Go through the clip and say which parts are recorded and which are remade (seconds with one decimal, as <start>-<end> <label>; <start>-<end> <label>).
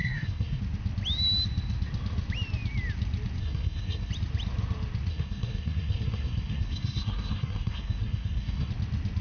0.0-0.6 remade; 0.6-3.4 recorded; 3.4-4.1 remade; 4.1-5.1 recorded; 5.1-8.7 remade; 8.7-9.2 recorded